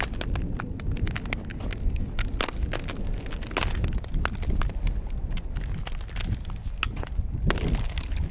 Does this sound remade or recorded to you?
recorded